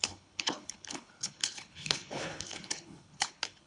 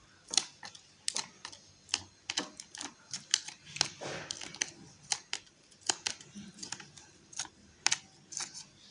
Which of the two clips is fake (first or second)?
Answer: first